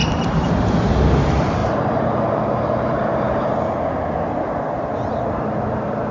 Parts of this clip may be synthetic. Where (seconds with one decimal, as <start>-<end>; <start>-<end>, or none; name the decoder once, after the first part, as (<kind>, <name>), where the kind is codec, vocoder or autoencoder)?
1.6-3.7 (vocoder, BigVGAN v2)